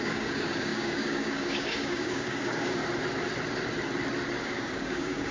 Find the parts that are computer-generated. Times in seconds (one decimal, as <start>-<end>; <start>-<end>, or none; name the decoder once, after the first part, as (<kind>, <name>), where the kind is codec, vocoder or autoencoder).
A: 0.0-2.8 (codec, DAC); 4.4-5.3